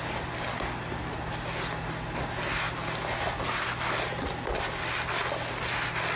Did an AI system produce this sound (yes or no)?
no